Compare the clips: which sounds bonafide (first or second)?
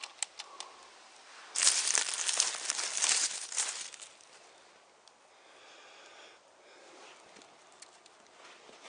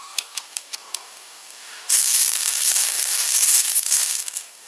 first